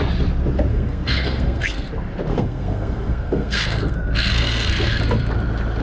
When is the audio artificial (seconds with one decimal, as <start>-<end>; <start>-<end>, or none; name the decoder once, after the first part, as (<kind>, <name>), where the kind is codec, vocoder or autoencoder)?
0.7-1.9 (codec, SNAC); 2.3-5.0